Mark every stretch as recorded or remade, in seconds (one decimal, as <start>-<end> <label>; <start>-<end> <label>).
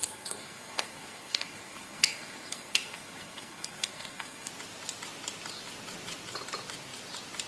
0.0-4.5 remade; 4.5-7.5 recorded